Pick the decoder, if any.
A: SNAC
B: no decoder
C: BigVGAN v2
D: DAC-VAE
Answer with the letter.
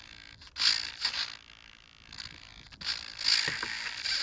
B